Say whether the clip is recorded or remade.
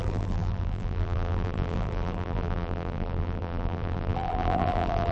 remade